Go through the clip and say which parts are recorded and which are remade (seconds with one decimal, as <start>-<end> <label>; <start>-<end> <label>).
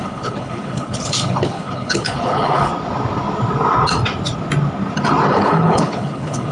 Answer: 0.0-2.7 remade; 2.7-5.3 recorded; 5.3-6.5 remade